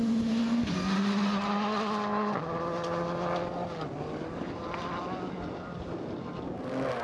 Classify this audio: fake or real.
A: real